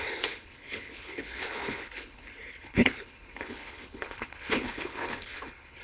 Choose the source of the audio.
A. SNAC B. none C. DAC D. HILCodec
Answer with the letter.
D